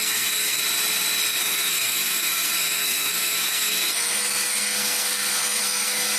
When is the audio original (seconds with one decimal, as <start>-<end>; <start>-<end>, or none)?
0.6-1.4